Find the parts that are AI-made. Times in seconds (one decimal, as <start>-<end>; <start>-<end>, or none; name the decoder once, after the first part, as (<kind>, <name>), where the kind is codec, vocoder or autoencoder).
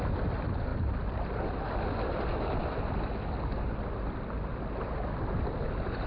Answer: none